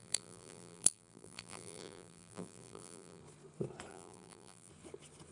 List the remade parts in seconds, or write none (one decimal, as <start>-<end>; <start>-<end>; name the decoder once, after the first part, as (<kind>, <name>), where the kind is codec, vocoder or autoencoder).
0.0-3.2 (vocoder, BigVGAN v2); 3.9-4.7